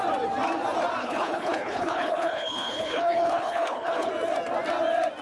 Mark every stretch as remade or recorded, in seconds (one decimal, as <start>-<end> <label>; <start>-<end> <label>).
0.0-1.0 recorded; 1.0-4.1 remade; 4.1-5.2 recorded